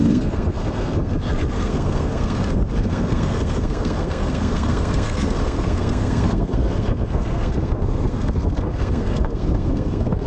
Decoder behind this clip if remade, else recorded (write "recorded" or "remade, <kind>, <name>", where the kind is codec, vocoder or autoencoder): remade, codec, SNAC